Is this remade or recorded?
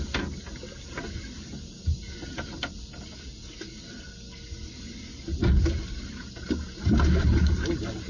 recorded